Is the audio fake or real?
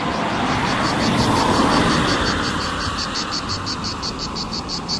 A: fake